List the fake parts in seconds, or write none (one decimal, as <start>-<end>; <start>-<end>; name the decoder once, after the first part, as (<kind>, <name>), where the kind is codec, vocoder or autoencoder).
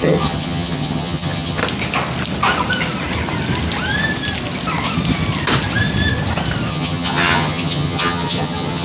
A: 0.0-1.6 (vocoder, HiFi-GAN); 6.7-8.8